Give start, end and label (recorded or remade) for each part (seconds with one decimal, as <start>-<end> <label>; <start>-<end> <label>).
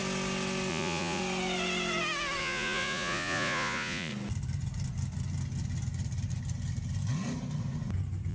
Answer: 0.0-0.7 recorded; 0.7-1.2 remade; 1.2-2.4 recorded; 2.4-4.1 remade; 4.1-8.3 recorded